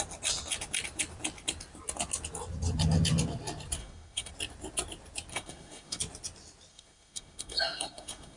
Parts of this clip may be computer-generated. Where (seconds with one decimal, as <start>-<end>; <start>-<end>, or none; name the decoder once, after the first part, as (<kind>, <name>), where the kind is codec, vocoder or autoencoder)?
3.8-4.3 (codec, SNAC); 5.3-6.0; 6.7-8.4